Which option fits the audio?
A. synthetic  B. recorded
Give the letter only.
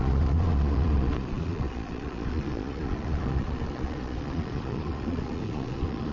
A